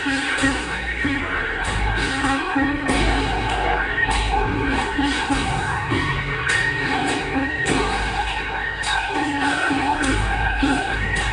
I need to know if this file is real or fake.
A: fake